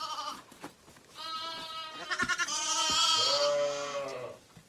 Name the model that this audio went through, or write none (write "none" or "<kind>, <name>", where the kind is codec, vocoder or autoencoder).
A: none